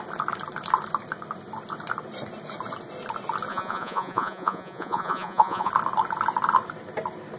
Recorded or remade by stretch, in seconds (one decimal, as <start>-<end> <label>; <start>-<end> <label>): 0.0-3.5 recorded; 3.5-5.7 remade; 5.7-7.4 recorded